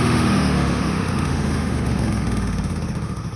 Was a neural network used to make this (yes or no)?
yes